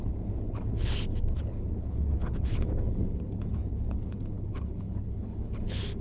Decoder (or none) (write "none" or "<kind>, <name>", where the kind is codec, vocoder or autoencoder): codec, HILCodec